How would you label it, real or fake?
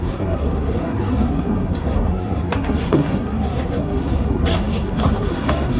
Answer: fake